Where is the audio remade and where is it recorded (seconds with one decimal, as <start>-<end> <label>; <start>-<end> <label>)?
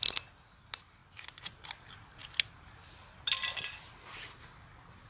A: 0.0-5.1 recorded